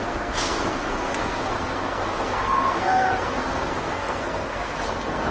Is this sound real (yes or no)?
no